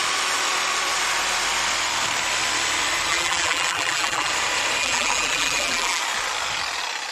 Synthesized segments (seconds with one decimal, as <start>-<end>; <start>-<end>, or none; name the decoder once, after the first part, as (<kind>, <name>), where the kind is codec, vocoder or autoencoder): 3.1-4.3 (vocoder, BigVGAN v2); 4.8-6.0